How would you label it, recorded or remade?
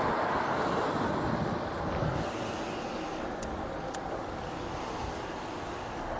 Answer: recorded